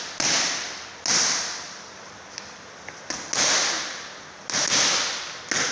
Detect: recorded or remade recorded